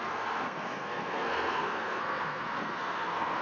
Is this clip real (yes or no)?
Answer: no